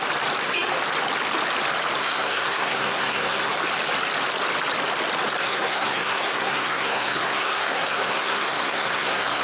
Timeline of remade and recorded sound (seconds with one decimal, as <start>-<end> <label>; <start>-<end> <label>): 0.0-2.0 recorded; 2.0-3.5 remade; 3.5-5.4 recorded; 5.4-9.4 remade